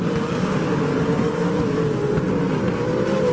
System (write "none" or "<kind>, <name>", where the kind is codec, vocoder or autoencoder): none